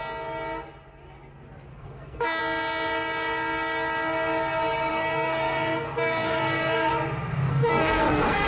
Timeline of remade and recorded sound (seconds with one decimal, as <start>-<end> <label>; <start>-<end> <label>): 0.0-1.7 recorded; 1.7-2.4 remade; 2.4-4.9 recorded; 4.9-6.9 remade; 6.9-7.5 recorded; 7.5-8.5 remade